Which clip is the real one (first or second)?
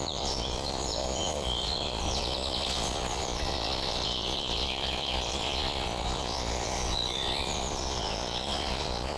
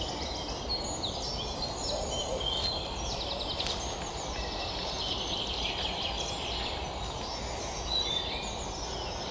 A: second